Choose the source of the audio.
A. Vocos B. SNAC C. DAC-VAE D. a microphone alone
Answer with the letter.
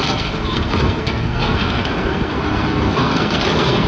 B